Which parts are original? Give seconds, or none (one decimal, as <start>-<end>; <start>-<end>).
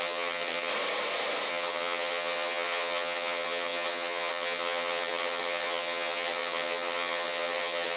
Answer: 0.7-1.5